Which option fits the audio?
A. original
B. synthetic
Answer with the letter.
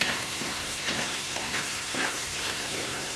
B